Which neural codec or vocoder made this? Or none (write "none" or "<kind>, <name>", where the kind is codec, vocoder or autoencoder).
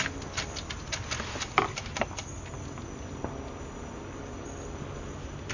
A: none